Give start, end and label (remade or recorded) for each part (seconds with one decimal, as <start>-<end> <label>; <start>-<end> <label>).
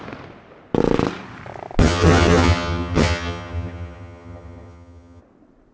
0.0-1.8 recorded; 1.8-5.2 remade; 5.2-5.7 recorded